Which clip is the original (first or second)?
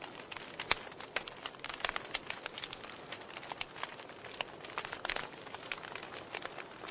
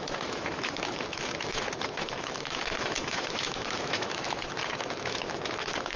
first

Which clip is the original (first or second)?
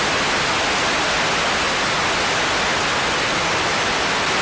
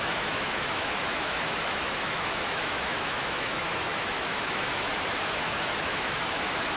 first